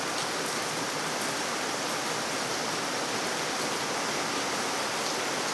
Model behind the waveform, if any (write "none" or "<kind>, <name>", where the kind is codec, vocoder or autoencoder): none